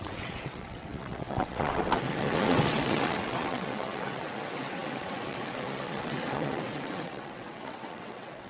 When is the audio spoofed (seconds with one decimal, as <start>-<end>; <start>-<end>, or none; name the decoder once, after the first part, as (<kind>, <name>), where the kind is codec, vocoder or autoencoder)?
0.0-8.5 (vocoder, WaveNeXt)